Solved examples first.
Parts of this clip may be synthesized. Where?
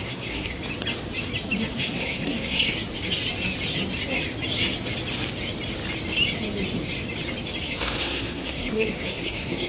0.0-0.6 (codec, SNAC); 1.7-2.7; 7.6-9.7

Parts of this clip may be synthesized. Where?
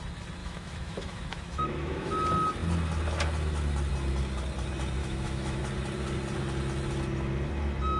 0.4-2.1 (autoencoder, DAC-VAE); 5.0-5.6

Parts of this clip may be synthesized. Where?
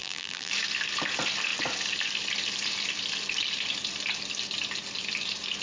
0.0-0.5 (vocoder, BigVGAN v2)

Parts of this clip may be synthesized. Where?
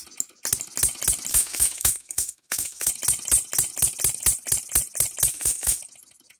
1.3-2.9 (autoencoder, DAC-VAE); 5.3-5.8